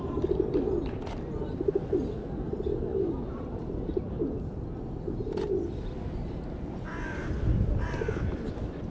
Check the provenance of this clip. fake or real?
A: real